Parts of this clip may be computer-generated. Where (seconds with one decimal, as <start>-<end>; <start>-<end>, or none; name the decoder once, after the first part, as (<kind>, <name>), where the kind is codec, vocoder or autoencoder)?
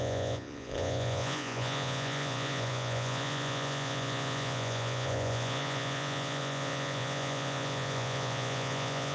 0.0-9.1 (vocoder, Vocos)